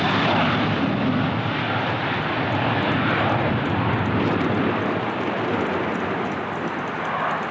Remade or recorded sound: recorded